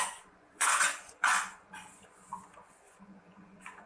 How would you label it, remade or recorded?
remade